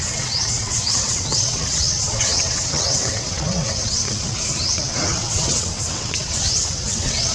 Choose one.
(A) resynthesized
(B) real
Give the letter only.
A